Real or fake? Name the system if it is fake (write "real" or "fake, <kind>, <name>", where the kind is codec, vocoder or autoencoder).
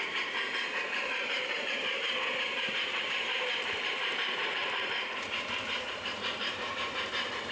fake, vocoder, BigVGAN v2